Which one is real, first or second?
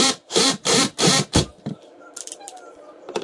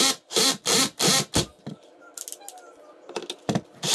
second